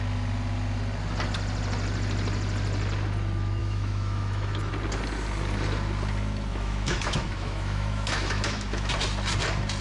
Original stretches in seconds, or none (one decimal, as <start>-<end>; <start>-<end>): 0.0-3.6; 4.7-6.5; 8.9-9.8